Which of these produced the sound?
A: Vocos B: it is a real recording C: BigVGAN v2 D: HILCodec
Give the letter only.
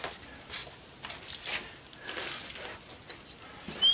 B